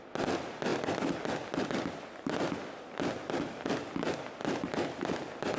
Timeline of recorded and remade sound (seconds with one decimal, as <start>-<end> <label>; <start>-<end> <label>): 0.0-5.6 recorded